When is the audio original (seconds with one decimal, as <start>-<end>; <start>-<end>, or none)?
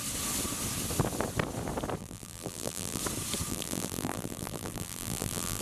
0.0-2.0; 3.0-3.5